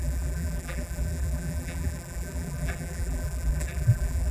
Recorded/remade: remade